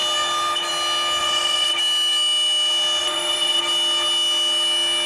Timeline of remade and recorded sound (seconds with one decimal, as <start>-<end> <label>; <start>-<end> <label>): 0.0-1.2 recorded; 1.2-1.7 remade; 1.7-3.0 recorded; 3.0-3.6 remade; 3.6-5.1 recorded